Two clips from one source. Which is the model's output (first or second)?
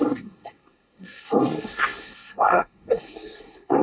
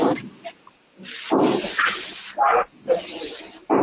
first